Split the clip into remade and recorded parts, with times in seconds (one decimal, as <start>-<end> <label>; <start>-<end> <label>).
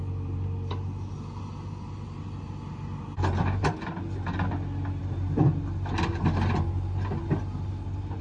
0.0-8.2 recorded